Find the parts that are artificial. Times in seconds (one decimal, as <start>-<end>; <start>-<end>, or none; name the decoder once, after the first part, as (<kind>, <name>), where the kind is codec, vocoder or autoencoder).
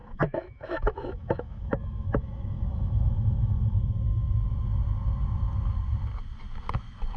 0.0-3.1 (autoencoder, DAC-VAE)